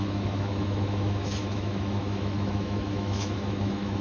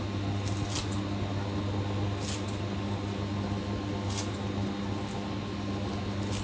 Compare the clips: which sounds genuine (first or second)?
second